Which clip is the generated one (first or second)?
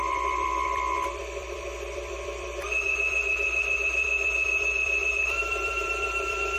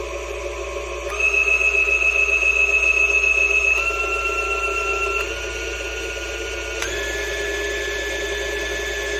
first